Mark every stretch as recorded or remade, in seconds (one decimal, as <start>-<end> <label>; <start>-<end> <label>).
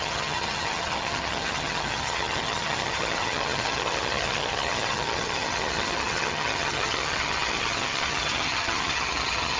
0.0-9.6 remade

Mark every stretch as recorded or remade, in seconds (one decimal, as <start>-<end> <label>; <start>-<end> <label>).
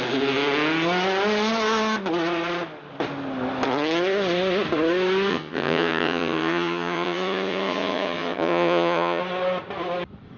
0.0-5.3 recorded; 5.3-9.2 remade; 9.2-10.4 recorded